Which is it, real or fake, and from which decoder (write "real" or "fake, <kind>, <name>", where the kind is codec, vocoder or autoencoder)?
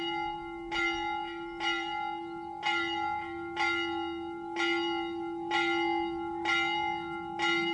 real